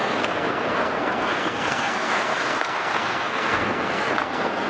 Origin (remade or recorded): remade